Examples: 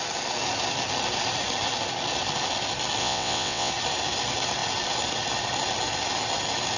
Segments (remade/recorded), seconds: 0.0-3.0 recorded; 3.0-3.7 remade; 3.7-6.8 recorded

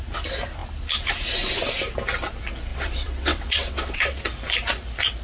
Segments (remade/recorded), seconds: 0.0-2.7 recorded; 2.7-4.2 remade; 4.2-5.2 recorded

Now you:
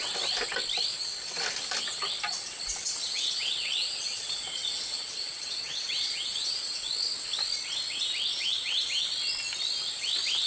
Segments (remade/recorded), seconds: 0.0-2.3 recorded; 2.3-6.9 remade; 6.9-8.3 recorded; 8.3-8.9 remade; 8.9-10.5 recorded

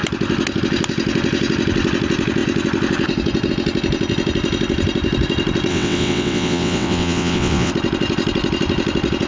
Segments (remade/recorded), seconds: 0.0-5.7 recorded; 5.7-7.7 remade; 7.7-9.3 recorded